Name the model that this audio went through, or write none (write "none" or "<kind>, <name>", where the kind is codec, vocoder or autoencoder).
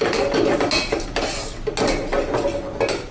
none